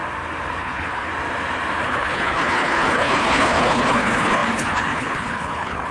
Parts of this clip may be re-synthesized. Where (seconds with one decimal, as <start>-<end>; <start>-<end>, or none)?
0.6-1.1; 1.8-5.9